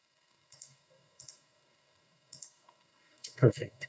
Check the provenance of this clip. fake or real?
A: fake